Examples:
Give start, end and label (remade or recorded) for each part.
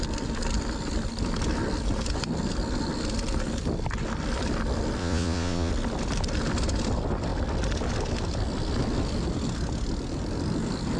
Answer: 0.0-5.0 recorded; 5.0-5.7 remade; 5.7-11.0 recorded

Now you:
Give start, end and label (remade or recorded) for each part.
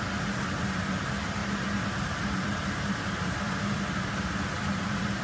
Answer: 0.0-5.2 recorded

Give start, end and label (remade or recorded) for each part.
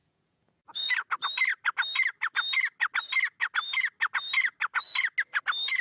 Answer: 0.0-0.9 remade; 0.9-5.8 recorded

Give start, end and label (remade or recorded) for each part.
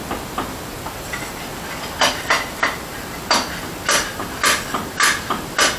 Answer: 0.0-5.8 recorded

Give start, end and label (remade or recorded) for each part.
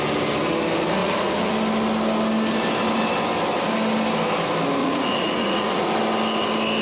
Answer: 0.0-1.0 recorded; 1.0-1.5 remade; 1.5-4.8 recorded; 4.8-5.9 remade; 5.9-6.8 recorded